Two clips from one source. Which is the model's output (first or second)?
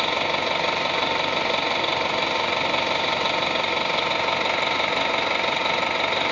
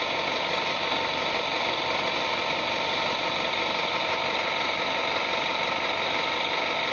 second